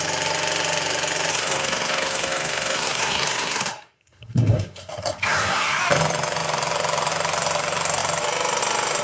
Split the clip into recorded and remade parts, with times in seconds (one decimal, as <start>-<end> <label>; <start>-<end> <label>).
0.0-1.3 recorded; 1.3-5.8 remade; 5.8-9.0 recorded